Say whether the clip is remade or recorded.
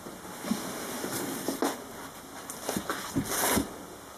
recorded